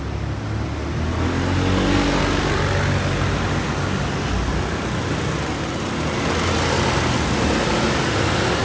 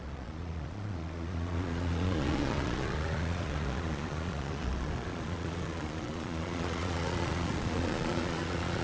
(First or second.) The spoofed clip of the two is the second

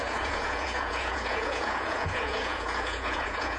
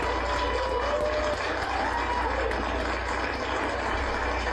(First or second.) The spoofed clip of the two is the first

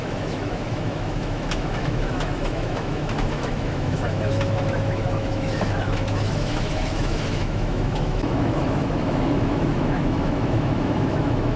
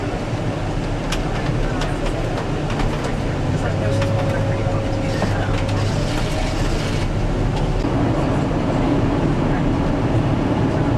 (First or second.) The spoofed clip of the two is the first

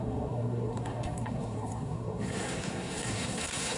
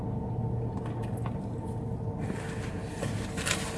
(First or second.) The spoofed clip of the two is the first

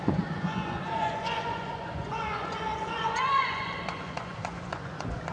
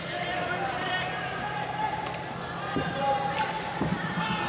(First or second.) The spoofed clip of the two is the first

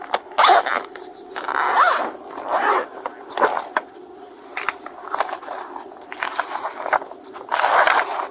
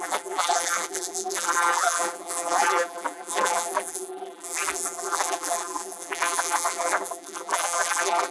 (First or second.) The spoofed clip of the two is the second